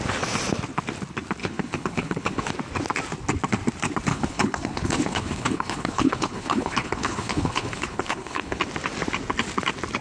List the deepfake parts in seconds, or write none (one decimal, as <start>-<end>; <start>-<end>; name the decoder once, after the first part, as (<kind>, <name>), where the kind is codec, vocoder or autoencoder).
1.4-2.5 (codec, HILCodec); 4.1-8.6

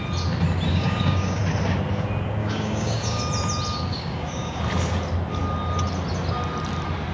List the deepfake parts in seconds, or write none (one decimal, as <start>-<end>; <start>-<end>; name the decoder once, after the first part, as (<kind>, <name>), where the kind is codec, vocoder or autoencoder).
0.7-1.4 (codec, DAC); 2.4-3.2; 3.9-4.6

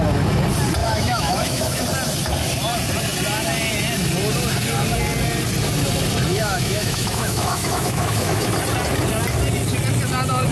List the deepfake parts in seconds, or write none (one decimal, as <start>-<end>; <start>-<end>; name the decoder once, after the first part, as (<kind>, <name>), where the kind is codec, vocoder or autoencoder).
0.8-1.8 (autoencoder, DAC-VAE); 6.3-8.5

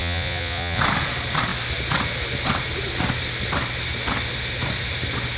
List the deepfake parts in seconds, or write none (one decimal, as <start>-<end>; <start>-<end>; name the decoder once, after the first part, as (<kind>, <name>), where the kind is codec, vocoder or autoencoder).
0.0-0.8 (vocoder, Vocos)

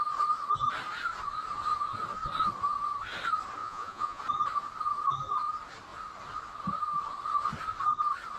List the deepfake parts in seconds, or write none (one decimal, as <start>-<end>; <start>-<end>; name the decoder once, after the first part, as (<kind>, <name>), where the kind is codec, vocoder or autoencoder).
3.6-4.2 (vocoder, Vocos)

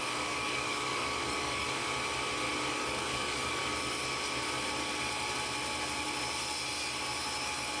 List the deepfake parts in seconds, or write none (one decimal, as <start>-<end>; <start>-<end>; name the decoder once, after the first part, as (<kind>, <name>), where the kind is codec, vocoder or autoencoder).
0.0-1.8 (codec, DAC); 2.7-3.6